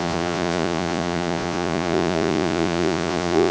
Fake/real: fake